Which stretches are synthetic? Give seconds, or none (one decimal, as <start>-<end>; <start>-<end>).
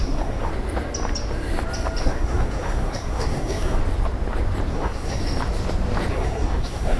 0.0-0.5; 2.0-3.8; 4.7-5.2; 6.1-7.0